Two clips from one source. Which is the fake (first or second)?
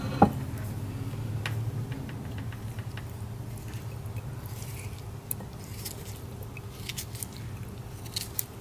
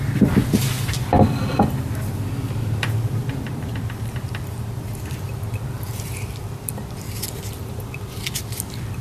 second